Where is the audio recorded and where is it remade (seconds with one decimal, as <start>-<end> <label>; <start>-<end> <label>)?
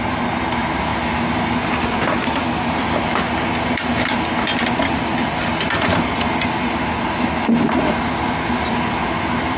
0.0-9.6 recorded